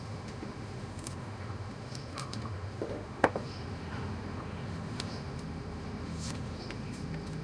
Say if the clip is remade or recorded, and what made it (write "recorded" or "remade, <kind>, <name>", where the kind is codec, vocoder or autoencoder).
remade, autoencoder, DAC-VAE